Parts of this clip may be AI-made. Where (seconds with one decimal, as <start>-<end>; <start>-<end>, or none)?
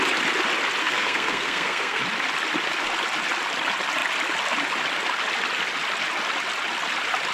0.8-2.0